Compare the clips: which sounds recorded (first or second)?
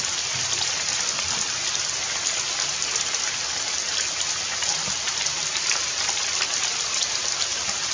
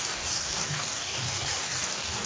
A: first